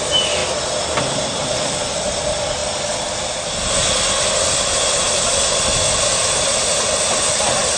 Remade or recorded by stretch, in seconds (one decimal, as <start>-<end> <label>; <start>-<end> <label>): 0.0-7.8 recorded